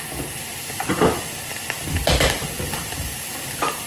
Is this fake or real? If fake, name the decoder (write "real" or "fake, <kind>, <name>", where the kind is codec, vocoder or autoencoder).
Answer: fake, vocoder, BigVGAN v2